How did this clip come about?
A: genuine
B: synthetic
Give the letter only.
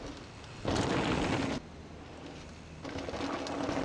A